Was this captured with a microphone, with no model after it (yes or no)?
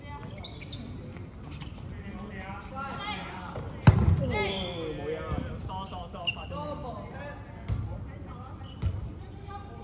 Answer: yes